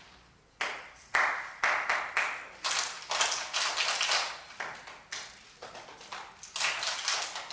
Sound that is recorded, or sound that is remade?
recorded